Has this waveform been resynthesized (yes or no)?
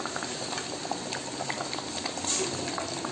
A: no